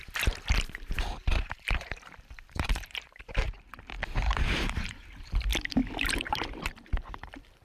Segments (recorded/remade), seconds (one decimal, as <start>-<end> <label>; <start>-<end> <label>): 0.0-7.6 remade

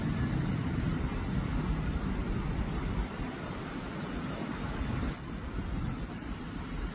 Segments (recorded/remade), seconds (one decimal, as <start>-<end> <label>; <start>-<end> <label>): 0.0-1.1 remade; 1.1-1.8 recorded; 1.8-6.9 remade

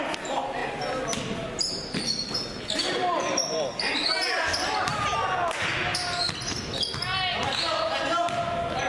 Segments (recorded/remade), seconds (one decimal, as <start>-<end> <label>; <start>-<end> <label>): 0.0-2.8 recorded; 2.8-5.0 remade; 5.0-5.9 recorded; 5.9-6.6 remade; 6.6-8.9 recorded